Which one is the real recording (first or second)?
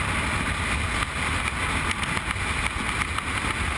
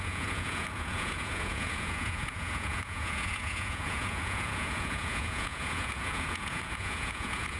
first